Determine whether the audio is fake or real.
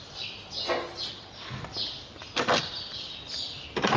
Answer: real